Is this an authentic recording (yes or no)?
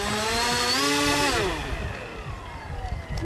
yes